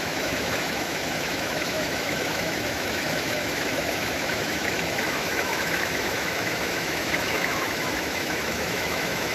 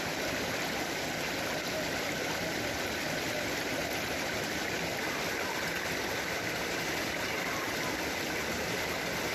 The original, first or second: second